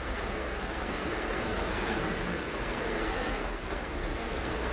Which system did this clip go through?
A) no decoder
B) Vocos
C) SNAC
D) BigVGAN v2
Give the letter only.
C